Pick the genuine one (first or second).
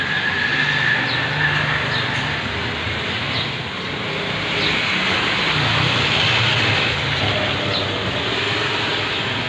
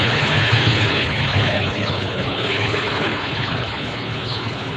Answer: first